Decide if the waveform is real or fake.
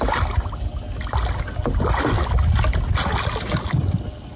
real